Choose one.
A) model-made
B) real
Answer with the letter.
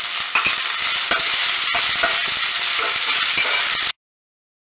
B